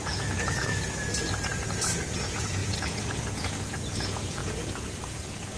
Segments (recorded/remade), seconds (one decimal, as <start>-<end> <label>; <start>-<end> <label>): 0.0-0.7 remade; 0.7-1.3 recorded; 1.3-5.6 remade